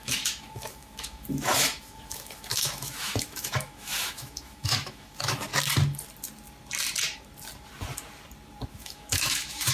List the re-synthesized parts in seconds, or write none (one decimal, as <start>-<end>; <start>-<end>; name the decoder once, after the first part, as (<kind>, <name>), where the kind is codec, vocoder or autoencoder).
0.0-5.5 (autoencoder, DAC-VAE); 8.7-9.7